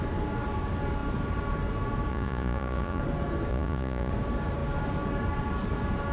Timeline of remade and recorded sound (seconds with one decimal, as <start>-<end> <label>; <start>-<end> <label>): 0.0-2.1 recorded; 2.1-3.0 remade; 3.0-3.5 recorded; 3.5-4.1 remade; 4.1-6.1 recorded